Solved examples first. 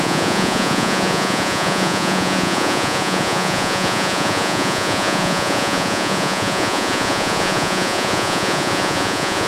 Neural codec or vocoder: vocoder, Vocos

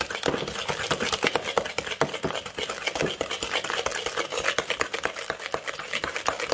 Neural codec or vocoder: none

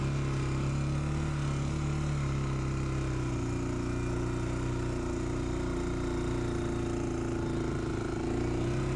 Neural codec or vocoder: none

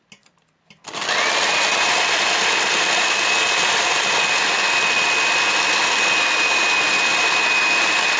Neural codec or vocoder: none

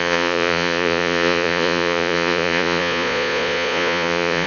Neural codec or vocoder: vocoder, Vocos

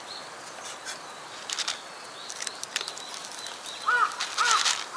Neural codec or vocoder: none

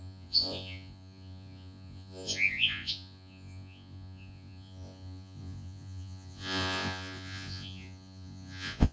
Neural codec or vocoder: vocoder, Vocos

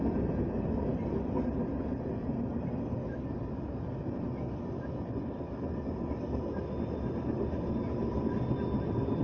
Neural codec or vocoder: none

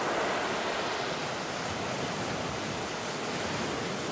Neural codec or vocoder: none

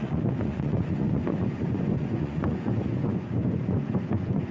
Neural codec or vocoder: vocoder, Vocos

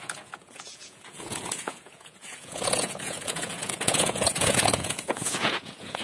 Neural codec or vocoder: vocoder, Vocos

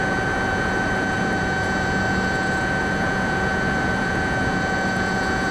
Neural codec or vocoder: vocoder, Vocos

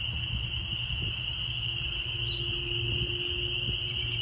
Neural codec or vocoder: none